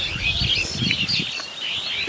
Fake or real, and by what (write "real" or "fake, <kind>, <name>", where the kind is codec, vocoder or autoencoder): real